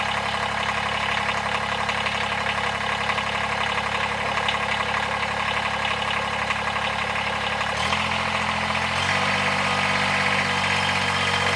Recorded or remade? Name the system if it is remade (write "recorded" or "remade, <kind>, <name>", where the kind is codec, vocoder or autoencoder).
recorded